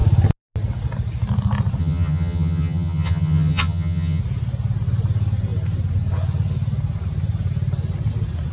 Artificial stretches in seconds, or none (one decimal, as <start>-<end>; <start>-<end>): 1.8-4.2